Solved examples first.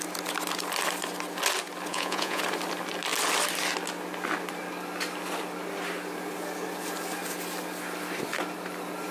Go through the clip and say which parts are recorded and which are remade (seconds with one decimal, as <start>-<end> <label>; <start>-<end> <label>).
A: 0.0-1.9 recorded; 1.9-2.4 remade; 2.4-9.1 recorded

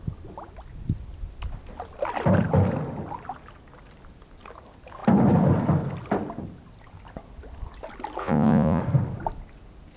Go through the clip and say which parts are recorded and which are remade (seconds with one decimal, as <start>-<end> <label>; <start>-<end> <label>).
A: 0.0-8.2 recorded; 8.2-8.8 remade; 8.8-10.0 recorded

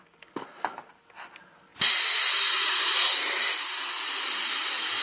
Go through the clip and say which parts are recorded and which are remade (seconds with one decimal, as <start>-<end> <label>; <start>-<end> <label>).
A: 0.0-5.0 recorded

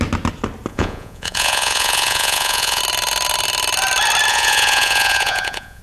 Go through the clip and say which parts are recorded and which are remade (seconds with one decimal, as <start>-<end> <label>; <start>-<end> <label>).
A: 0.0-0.7 recorded; 0.7-2.8 remade; 2.8-4.3 recorded; 4.3-5.8 remade

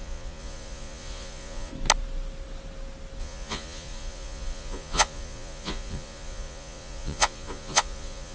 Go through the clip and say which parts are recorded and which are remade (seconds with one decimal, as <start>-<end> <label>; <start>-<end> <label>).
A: 0.0-1.7 remade; 1.7-3.2 recorded; 3.2-8.3 remade

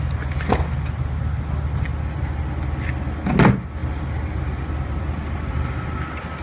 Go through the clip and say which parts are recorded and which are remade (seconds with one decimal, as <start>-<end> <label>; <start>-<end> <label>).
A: 0.0-6.4 recorded

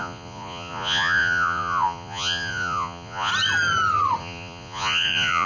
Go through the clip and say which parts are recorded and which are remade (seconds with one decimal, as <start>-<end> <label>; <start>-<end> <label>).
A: 0.0-3.3 remade; 3.3-4.2 recorded; 4.2-5.5 remade

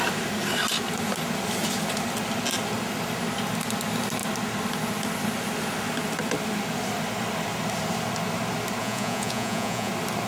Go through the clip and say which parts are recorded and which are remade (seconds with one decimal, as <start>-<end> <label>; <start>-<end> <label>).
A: 0.0-8.8 recorded; 8.8-9.9 remade; 9.9-10.3 recorded